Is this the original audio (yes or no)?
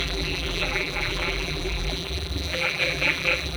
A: no